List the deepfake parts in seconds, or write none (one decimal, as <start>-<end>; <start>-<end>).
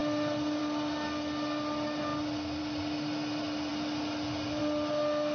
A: none